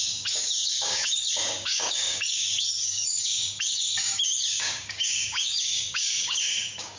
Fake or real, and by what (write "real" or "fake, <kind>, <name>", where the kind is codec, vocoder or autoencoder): fake, codec, DAC